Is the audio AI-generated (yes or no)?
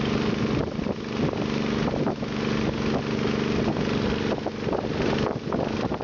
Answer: no